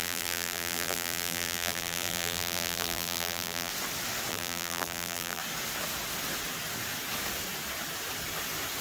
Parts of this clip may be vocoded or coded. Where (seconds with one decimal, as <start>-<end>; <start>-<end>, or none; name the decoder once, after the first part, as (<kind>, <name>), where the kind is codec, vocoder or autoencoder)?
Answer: 0.0-3.7 (vocoder, BigVGAN v2); 4.3-5.4